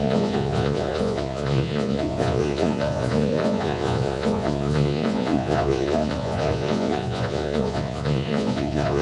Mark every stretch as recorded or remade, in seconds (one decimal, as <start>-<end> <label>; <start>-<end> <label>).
0.0-9.0 remade

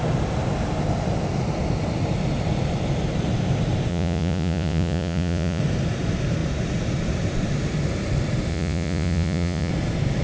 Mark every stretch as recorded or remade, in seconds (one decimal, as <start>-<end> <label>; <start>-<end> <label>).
0.0-3.9 recorded; 3.9-5.6 remade; 5.6-8.5 recorded; 8.5-9.7 remade; 9.7-10.2 recorded

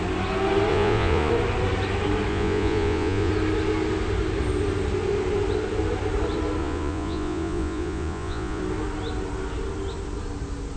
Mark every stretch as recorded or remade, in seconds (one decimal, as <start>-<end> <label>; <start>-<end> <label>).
0.0-0.7 recorded; 0.7-1.3 remade; 1.3-2.3 recorded; 2.3-3.3 remade; 3.3-6.6 recorded; 6.6-8.6 remade; 8.6-10.8 recorded

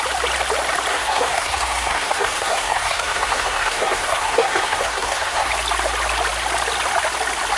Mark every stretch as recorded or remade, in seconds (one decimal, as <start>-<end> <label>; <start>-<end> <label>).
0.0-0.9 recorded; 0.9-5.5 remade; 5.5-7.6 recorded

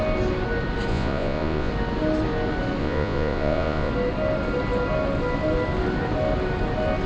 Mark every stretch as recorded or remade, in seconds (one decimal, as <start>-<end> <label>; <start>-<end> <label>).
0.0-0.9 recorded; 0.9-1.7 remade; 1.7-2.8 recorded; 2.8-3.9 remade; 3.9-7.1 recorded

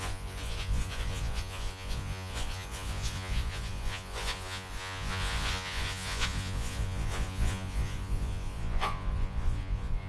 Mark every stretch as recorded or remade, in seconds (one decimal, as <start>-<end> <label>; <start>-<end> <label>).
0.0-10.1 remade

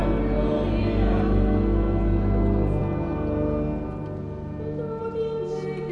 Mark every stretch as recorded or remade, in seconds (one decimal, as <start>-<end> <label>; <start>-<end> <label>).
0.0-5.9 recorded